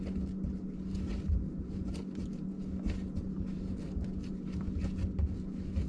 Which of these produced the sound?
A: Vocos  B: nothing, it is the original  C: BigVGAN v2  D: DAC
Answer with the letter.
B